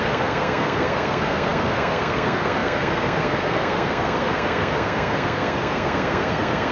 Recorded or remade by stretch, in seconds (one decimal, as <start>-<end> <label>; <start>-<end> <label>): 0.0-6.7 remade